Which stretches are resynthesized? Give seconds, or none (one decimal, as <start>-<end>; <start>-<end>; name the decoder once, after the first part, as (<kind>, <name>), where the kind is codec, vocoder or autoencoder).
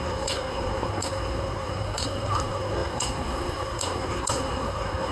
0.0-5.1 (codec, SNAC)